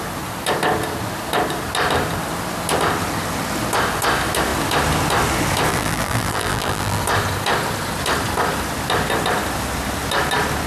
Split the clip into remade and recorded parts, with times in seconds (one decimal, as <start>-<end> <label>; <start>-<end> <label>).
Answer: 0.0-5.7 recorded; 5.7-7.0 remade; 7.0-10.7 recorded